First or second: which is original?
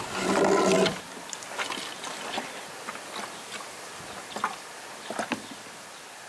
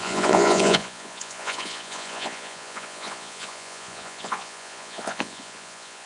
first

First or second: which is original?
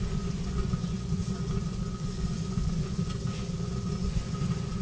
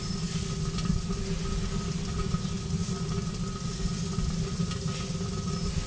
second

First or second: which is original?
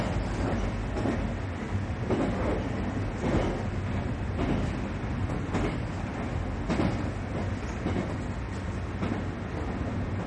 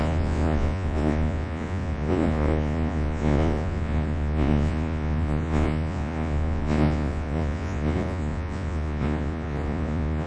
first